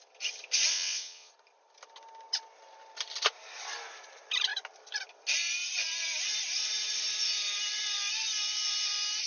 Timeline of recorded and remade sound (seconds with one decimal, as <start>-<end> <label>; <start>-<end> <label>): 0.0-0.7 recorded; 0.7-1.3 remade; 1.3-9.3 recorded